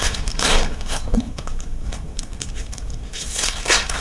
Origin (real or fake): fake